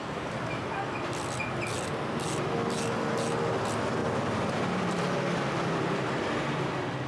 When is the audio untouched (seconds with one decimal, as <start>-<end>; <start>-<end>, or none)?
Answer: 1.3-4.0; 6.3-7.1